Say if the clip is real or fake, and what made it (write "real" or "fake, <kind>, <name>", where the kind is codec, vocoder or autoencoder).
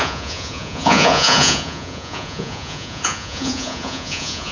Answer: fake, vocoder, Vocos